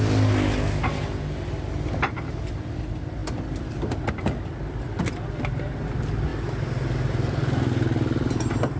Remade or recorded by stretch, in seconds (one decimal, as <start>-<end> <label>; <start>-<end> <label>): 0.0-8.8 recorded